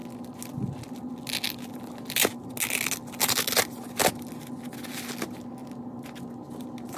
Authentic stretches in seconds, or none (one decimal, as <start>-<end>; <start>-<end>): 0.0-7.0

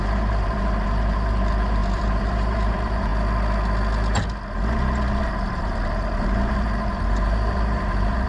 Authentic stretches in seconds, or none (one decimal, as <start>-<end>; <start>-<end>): 3.1-5.2